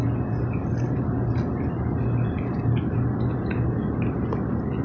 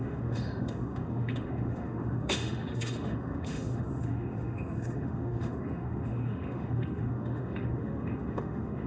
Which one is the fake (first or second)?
second